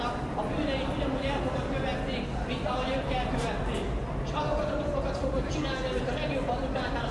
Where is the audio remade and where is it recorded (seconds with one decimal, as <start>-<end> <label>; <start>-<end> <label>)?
0.0-7.1 recorded

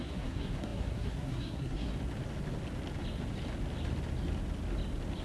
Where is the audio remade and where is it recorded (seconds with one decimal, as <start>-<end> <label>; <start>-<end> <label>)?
0.0-1.9 remade; 1.9-5.2 recorded

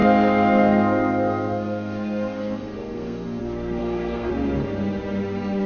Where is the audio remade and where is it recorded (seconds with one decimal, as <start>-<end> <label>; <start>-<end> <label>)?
0.0-3.4 remade; 3.4-3.8 recorded; 3.8-4.3 remade; 4.3-5.7 recorded

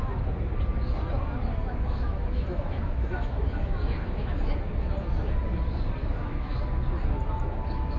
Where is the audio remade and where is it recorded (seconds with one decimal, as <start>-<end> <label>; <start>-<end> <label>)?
0.0-1.6 recorded; 1.6-4.5 remade; 4.5-6.0 recorded; 6.0-6.6 remade; 6.6-8.0 recorded

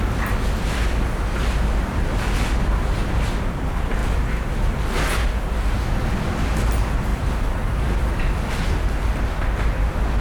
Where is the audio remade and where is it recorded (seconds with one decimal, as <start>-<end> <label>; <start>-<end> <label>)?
0.0-2.6 recorded; 2.6-3.3 remade; 3.3-7.1 recorded; 7.1-8.5 remade; 8.5-10.2 recorded